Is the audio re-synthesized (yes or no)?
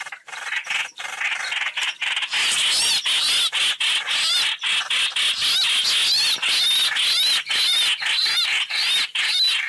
no